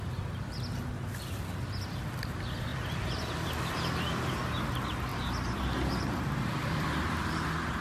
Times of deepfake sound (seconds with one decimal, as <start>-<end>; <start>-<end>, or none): 2.7-3.3; 5.1-7.8